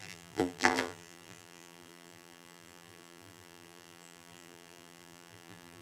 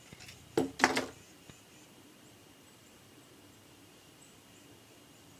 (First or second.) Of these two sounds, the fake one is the first